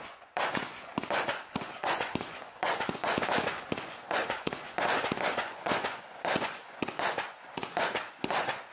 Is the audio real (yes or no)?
no